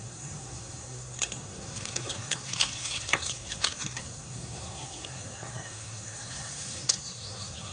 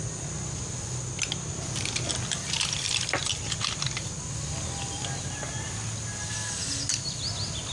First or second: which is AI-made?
first